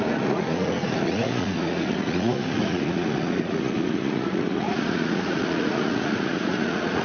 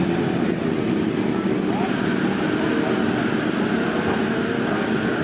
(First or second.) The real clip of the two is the second